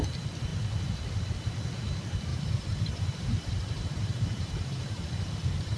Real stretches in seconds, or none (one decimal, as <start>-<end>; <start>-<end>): 0.0-2.3